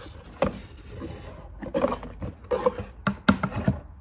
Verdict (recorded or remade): recorded